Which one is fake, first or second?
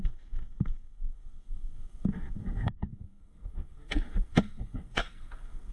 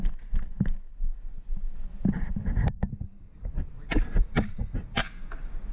first